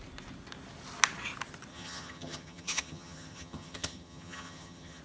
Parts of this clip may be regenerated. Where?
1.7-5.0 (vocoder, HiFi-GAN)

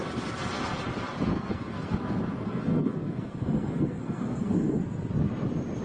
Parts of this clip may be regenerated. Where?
1.3-4.8 (codec, SNAC)

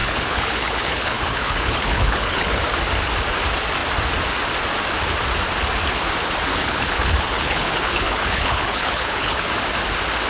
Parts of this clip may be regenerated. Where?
0.0-2.6 (codec, HILCodec); 6.5-9.5

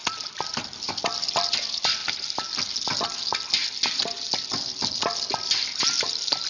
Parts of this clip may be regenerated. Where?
none

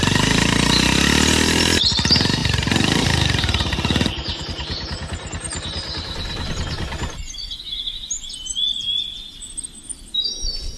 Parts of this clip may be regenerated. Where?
none

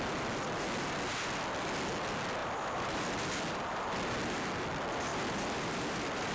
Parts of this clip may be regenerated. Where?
2.4-3.1 (vocoder, BigVGAN v2); 5.1-6.3

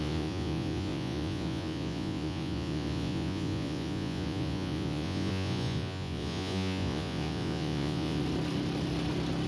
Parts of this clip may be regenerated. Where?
0.0-8.2 (vocoder, Vocos)

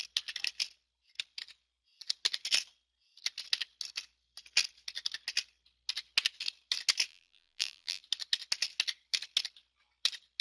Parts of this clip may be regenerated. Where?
7.1-8.0 (vocoder, BigVGAN v2)